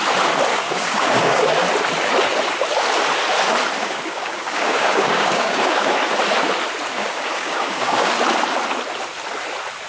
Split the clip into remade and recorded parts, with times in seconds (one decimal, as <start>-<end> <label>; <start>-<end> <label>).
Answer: 0.0-0.5 recorded; 0.5-1.5 remade; 1.5-3.8 recorded; 3.8-5.9 remade; 5.9-7.0 recorded; 7.0-8.1 remade; 8.1-9.9 recorded